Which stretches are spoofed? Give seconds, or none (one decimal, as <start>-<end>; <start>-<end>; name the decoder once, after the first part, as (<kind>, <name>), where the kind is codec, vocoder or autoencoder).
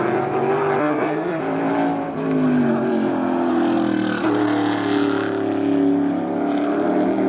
0.8-1.4 (codec, SNAC)